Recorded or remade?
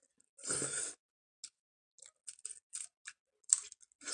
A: recorded